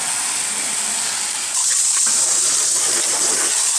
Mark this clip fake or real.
real